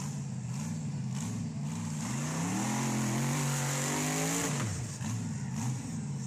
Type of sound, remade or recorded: recorded